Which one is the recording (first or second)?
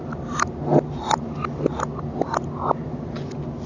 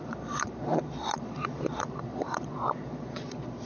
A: first